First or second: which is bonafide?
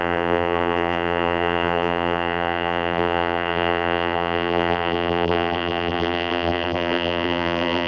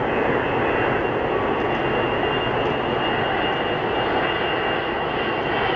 second